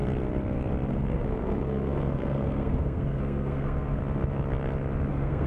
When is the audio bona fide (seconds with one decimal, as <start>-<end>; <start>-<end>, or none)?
0.0-0.9; 4.0-5.1